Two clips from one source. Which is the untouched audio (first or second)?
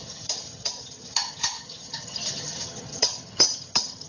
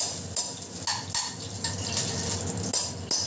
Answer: second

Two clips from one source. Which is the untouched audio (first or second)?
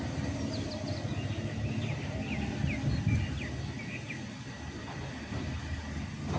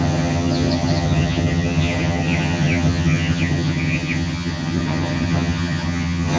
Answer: first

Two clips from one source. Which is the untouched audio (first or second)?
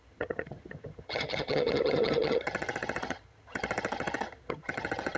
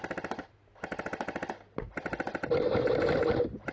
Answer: second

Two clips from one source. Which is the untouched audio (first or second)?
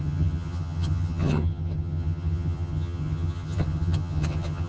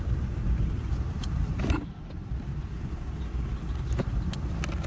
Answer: second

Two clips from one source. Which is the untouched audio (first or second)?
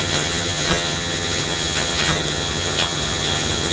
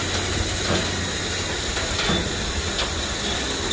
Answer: second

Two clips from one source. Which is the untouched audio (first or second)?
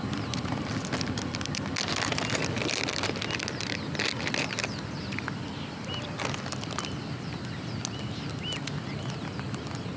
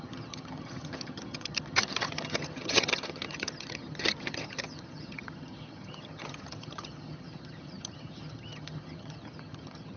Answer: first